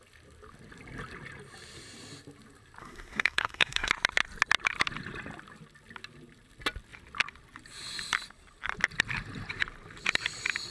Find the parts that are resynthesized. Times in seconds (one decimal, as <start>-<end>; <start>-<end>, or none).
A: 2.8-3.9